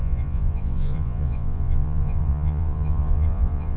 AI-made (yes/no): yes